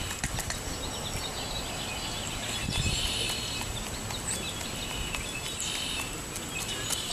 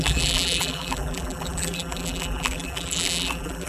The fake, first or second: second